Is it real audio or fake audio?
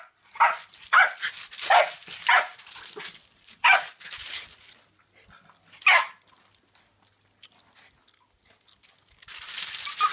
real